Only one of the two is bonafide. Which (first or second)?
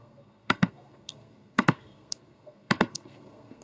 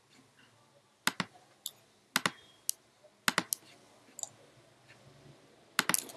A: second